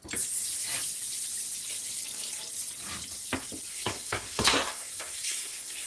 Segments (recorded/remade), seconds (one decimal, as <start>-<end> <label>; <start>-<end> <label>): 0.0-3.7 recorded; 3.7-5.9 remade